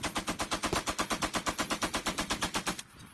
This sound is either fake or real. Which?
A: real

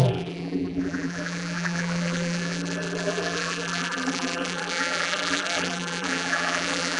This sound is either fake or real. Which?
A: fake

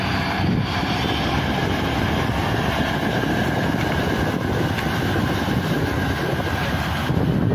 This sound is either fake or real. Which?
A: real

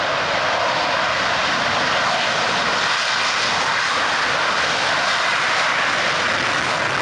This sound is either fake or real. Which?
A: real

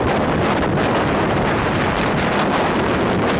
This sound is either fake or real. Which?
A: real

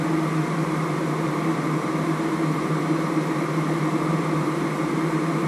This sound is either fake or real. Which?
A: fake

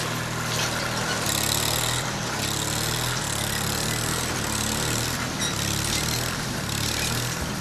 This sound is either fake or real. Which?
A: real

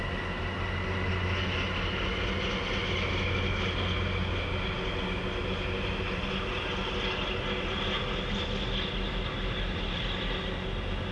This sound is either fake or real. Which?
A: real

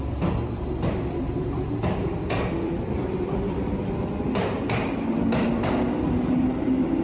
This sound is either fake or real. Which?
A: fake